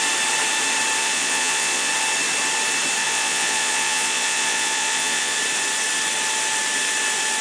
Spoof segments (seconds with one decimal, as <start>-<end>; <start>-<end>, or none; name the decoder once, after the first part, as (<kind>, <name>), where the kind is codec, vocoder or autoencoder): 1.0-1.9 (vocoder, Vocos); 3.0-5.4